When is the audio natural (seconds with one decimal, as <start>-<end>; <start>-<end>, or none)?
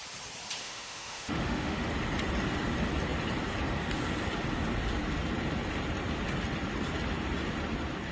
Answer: 0.0-0.6; 1.9-8.1